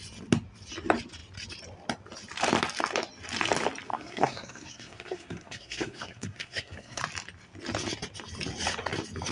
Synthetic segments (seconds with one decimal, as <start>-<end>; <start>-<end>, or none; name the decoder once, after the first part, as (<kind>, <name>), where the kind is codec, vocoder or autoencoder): 3.9-7.0 (codec, SNAC)